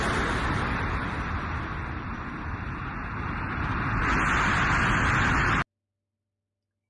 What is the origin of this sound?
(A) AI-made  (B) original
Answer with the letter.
B